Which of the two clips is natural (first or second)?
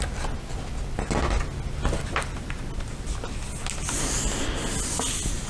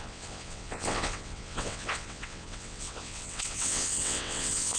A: first